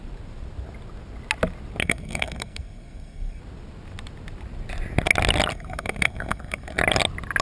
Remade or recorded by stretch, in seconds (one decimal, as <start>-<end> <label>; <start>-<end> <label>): 0.0-1.8 recorded; 1.8-3.4 remade; 3.4-5.5 recorded; 5.5-6.8 remade; 6.8-7.4 recorded